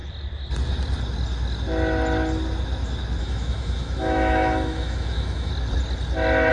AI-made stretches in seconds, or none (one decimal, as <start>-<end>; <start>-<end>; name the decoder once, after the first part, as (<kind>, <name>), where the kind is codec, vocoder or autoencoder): 3.2-5.5 (autoencoder, DAC-VAE)